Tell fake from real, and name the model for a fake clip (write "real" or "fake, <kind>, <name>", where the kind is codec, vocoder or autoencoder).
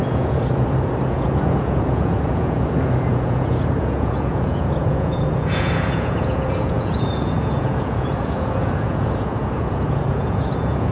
fake, vocoder, Vocos